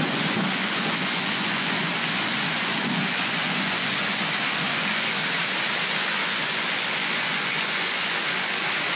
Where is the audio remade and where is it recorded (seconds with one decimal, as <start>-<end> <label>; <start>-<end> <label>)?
0.0-5.2 remade; 5.2-5.9 recorded; 5.9-9.0 remade